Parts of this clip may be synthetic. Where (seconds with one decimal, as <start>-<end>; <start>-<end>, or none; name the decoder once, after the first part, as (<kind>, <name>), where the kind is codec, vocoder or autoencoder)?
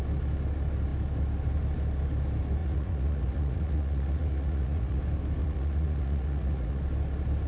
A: 2.6-5.0 (vocoder, Vocos); 5.4-6.8